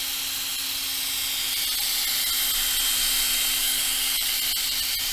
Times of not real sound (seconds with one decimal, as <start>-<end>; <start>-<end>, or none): 3.6-4.3